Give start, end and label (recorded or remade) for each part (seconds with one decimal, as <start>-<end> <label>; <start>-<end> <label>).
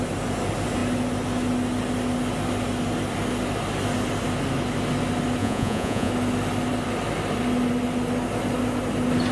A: 0.0-5.4 recorded; 5.4-6.1 remade; 6.1-9.3 recorded